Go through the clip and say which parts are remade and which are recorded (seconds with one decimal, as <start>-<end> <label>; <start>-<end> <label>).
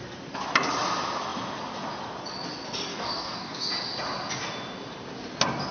0.0-2.9 recorded; 2.9-3.7 remade; 3.7-5.7 recorded